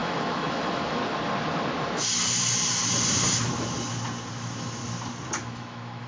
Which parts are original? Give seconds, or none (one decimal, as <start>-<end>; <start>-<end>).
1.0-4.3; 4.8-5.4